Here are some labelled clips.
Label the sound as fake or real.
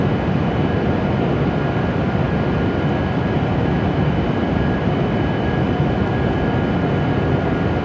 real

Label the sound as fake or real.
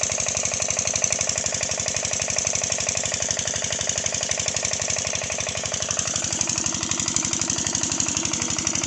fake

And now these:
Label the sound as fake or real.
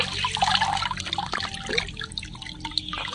real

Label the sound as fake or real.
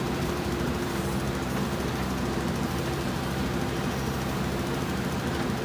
fake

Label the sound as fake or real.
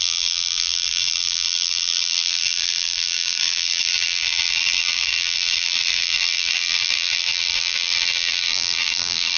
fake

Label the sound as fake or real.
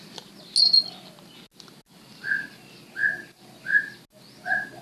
real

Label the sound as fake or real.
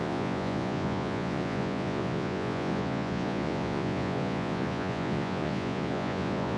fake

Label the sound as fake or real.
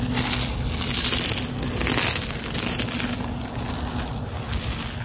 real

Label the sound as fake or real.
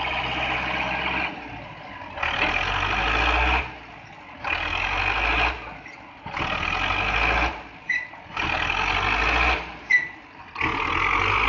real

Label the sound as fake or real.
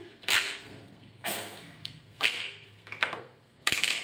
fake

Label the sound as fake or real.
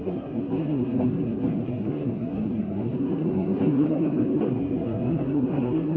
fake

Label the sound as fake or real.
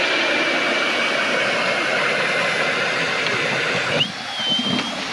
real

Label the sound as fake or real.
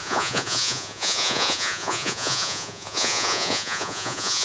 fake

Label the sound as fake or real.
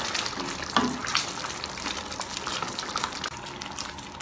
real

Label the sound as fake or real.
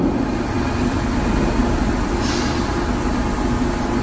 real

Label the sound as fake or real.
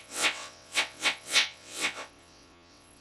fake